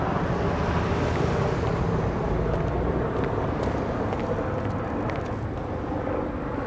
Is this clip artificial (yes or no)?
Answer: no